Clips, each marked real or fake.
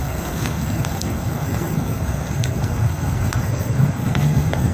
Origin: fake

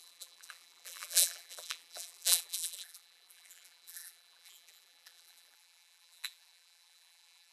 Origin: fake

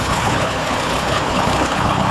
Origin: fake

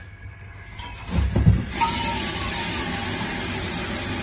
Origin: real